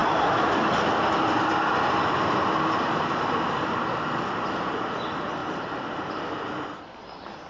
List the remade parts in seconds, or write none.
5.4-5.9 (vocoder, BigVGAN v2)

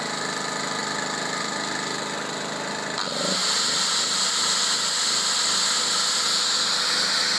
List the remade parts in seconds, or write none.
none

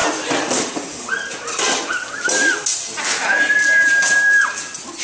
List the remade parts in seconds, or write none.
none

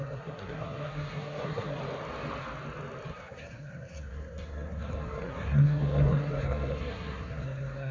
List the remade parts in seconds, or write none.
0.0-1.8 (codec, SNAC); 3.1-7.9

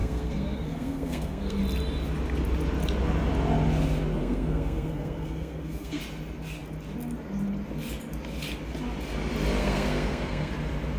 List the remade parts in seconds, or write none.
0.0-1.6 (codec, SNAC); 4.2-6.0; 9.6-10.5

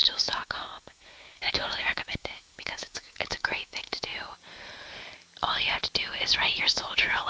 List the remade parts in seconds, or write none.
0.0-4.1 (autoencoder, DAC-VAE); 6.6-7.3

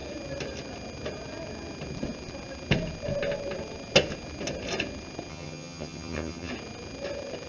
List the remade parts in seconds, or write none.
5.3-6.5 (vocoder, HiFi-GAN)

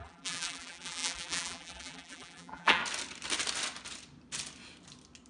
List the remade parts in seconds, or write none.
0.0-2.8 (vocoder, BigVGAN v2)